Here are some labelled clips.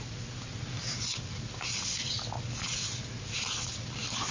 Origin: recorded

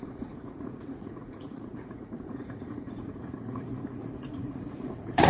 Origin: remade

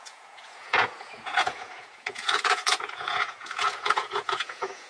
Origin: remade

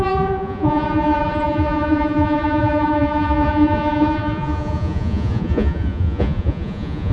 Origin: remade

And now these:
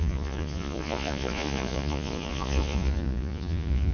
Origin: remade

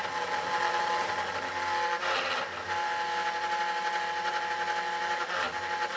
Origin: recorded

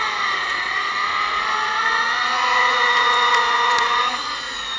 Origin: remade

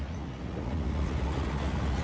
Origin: remade